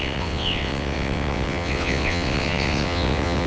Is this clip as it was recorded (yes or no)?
no